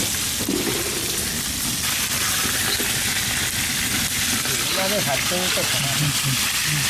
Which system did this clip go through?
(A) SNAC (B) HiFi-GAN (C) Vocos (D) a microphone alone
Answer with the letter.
D